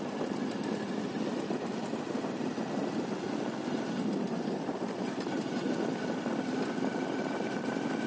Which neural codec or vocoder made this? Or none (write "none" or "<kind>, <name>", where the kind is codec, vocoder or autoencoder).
none